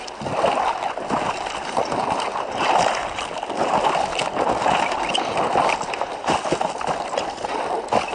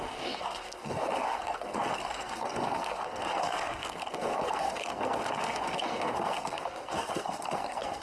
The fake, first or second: second